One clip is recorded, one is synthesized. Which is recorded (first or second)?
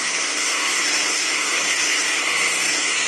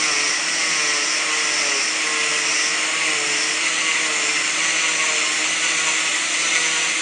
second